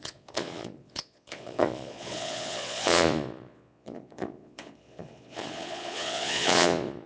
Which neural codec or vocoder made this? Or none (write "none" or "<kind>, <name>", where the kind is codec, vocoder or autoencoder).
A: vocoder, Vocos